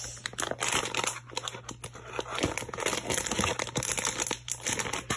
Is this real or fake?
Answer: real